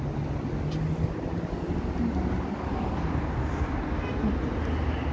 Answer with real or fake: real